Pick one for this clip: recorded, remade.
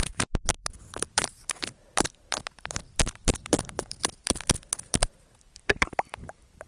remade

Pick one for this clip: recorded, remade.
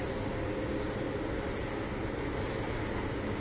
recorded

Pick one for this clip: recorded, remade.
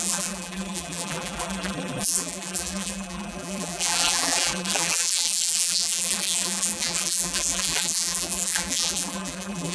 remade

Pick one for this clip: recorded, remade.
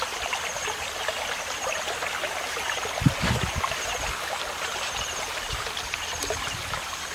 recorded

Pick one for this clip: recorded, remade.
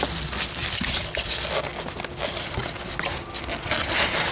recorded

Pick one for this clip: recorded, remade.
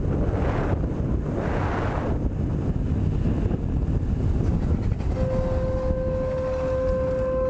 recorded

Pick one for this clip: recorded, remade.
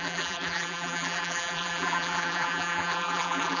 remade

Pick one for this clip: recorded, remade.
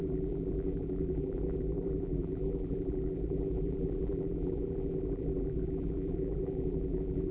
remade